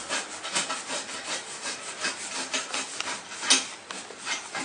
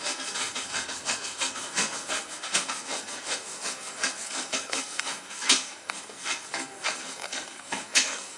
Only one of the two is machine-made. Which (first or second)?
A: second